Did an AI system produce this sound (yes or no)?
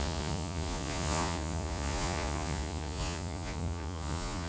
yes